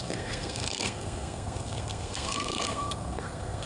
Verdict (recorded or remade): remade